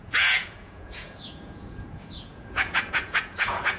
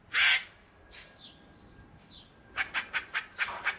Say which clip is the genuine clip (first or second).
second